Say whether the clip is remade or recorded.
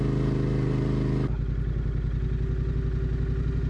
recorded